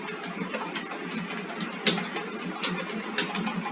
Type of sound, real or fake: real